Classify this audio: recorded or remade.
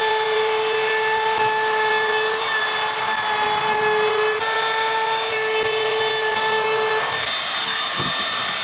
recorded